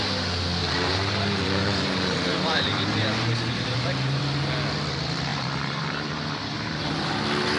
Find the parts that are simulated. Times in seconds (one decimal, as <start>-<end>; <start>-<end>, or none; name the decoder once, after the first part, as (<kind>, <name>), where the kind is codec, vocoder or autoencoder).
0.6-4.2 (vocoder, BigVGAN v2); 5.3-6.9